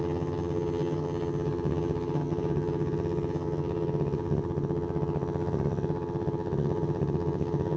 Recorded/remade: remade